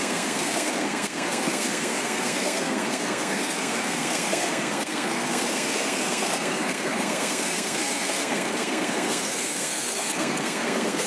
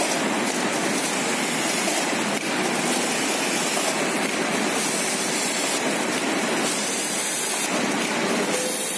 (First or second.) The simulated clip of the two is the first